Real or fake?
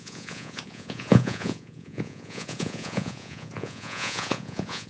fake